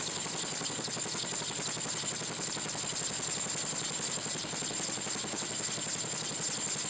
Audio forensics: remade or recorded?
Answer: recorded